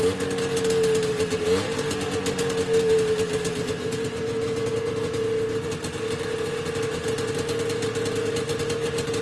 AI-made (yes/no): no